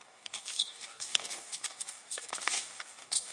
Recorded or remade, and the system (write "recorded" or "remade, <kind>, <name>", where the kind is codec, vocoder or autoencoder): remade, codec, DAC